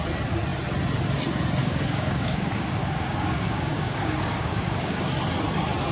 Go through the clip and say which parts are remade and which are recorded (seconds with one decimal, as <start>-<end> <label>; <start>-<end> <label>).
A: 0.0-1.6 recorded; 1.6-5.1 remade; 5.1-5.9 recorded